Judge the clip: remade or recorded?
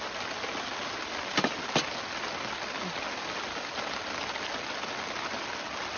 recorded